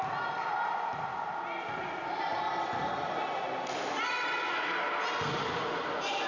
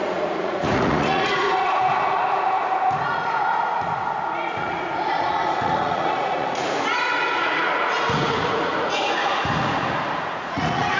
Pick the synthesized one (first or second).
second